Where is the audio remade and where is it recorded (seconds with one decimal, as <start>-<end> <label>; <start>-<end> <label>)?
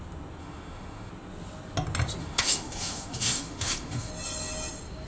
0.0-0.4 recorded; 0.4-1.1 remade; 1.1-2.2 recorded; 2.2-4.1 remade; 4.1-5.1 recorded